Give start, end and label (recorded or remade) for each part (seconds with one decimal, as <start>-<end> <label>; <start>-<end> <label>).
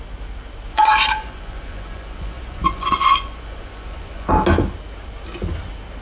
0.0-0.7 recorded; 0.7-4.3 remade; 4.3-6.0 recorded